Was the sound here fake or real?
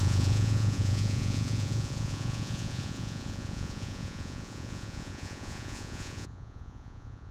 fake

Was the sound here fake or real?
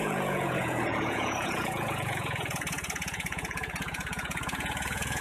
fake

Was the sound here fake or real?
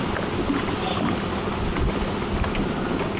real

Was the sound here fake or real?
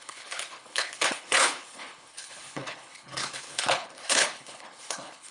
fake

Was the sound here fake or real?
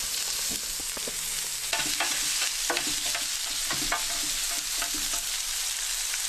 real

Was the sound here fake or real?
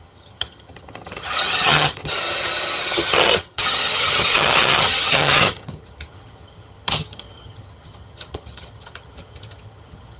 fake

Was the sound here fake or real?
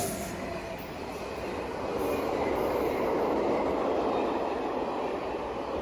real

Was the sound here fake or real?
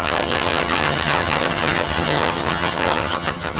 fake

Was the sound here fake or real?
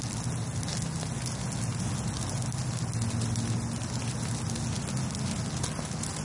real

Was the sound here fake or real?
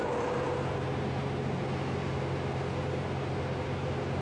real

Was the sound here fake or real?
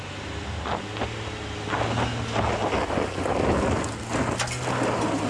real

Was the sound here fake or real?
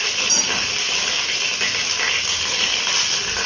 real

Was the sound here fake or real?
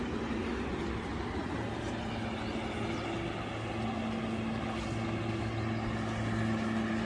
real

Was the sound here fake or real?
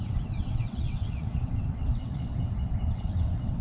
fake